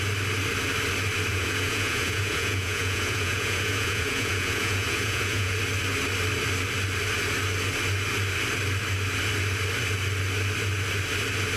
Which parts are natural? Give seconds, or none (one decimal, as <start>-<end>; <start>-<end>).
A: 0.0-1.3; 5.5-11.6